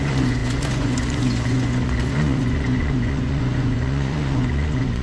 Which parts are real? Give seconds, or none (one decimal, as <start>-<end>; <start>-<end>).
none